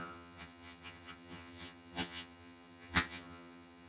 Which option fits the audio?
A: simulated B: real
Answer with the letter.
A